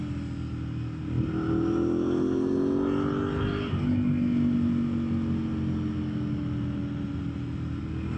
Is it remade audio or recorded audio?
recorded